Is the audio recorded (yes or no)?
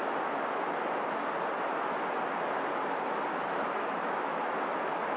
yes